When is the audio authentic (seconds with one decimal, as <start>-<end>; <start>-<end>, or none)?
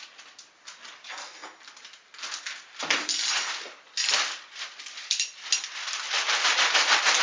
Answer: 0.0-7.2